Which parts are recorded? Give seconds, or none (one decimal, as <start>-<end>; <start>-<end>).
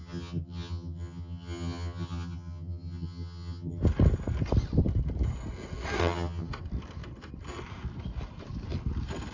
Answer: 3.8-6.0; 6.5-9.3